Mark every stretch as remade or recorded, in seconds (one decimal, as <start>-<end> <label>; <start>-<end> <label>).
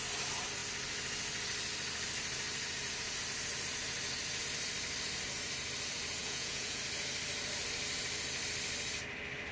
0.0-6.2 recorded; 6.2-6.8 remade; 6.8-9.5 recorded